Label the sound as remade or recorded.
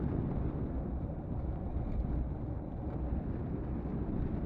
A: recorded